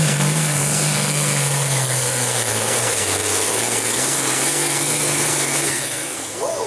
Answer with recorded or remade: remade